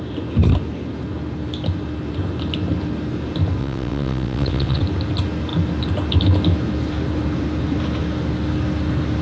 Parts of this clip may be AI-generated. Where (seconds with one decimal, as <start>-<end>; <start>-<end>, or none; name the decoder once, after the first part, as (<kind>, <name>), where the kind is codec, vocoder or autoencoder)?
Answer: 3.6-4.8 (vocoder, WaveNeXt)